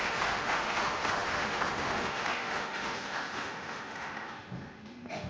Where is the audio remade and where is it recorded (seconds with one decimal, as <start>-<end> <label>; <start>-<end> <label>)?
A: 0.0-5.3 remade